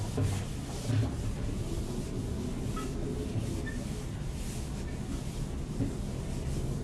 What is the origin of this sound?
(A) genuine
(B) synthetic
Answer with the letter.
A